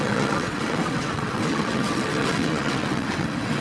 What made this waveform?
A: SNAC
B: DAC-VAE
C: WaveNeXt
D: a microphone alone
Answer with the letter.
C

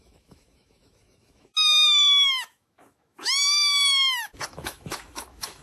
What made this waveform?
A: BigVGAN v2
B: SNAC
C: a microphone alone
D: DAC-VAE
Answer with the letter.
D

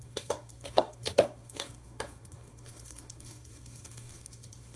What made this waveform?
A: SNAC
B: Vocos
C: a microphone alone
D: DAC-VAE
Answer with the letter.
A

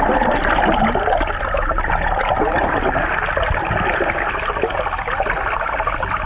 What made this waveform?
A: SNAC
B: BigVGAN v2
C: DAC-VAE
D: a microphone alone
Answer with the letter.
D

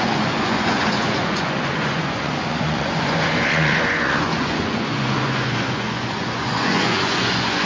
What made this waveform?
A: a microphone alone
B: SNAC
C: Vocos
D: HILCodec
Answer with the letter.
C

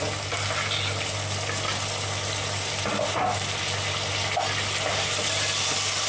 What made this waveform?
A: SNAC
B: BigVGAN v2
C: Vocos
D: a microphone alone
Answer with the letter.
D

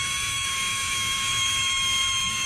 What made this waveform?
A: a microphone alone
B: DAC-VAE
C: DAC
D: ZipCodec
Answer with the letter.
B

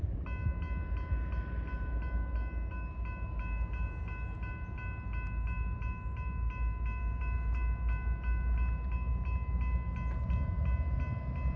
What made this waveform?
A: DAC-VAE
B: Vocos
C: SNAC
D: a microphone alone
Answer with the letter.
D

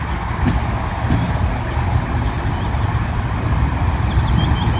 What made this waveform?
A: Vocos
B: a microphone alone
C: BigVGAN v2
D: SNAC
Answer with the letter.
B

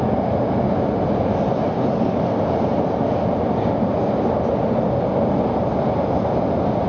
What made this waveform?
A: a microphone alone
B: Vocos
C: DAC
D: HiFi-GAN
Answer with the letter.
A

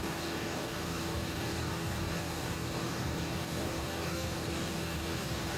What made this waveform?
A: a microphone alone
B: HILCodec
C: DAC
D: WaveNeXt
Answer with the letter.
C